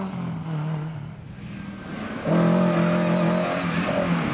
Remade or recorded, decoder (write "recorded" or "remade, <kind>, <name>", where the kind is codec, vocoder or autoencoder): recorded